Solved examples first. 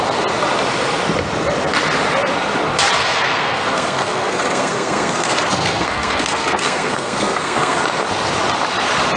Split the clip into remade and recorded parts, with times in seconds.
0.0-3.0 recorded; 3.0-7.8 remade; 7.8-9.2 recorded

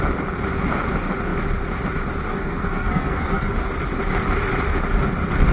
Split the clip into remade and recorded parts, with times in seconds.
0.0-2.3 recorded; 2.3-3.7 remade; 3.7-5.5 recorded